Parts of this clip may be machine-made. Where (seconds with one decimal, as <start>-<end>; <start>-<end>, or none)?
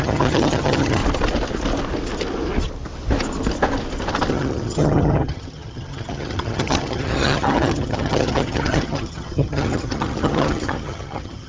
0.0-1.0; 4.3-11.5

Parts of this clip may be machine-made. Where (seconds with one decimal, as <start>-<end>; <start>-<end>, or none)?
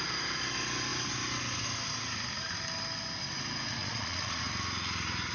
3.8-4.4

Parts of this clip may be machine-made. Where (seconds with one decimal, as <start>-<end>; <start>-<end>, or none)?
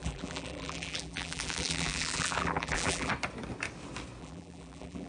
0.0-3.1; 4.2-5.1